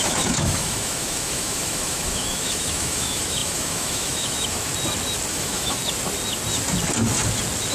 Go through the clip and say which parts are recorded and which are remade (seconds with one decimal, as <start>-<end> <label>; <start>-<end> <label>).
0.0-4.7 remade; 4.7-5.3 recorded; 5.3-5.8 remade; 5.8-7.7 recorded

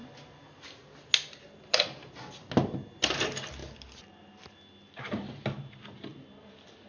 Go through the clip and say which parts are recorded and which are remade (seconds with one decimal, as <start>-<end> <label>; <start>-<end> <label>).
0.0-6.9 recorded

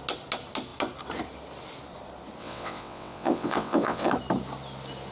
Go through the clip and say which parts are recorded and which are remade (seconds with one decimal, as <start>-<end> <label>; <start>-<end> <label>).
0.0-2.4 recorded; 2.4-4.1 remade; 4.1-5.1 recorded

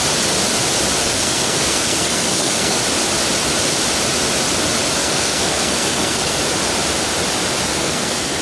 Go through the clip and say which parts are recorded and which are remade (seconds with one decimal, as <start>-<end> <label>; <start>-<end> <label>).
0.0-1.0 recorded; 1.0-2.8 remade; 2.8-5.0 recorded; 5.0-6.4 remade; 6.4-7.8 recorded; 7.8-8.4 remade

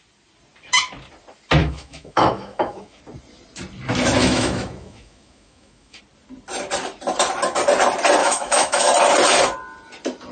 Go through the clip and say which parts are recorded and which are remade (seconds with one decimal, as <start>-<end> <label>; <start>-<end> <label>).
0.0-1.6 recorded; 1.6-3.0 remade; 3.0-4.2 recorded; 4.2-6.0 remade; 6.0-8.2 recorded; 8.2-8.9 remade; 8.9-10.3 recorded

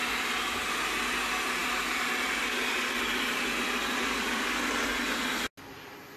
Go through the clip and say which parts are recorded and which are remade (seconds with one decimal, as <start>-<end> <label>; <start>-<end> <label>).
0.0-6.2 recorded